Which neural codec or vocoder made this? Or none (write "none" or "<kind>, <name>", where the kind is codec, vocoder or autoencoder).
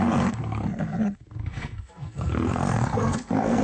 codec, SNAC